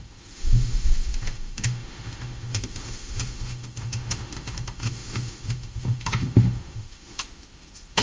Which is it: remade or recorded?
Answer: remade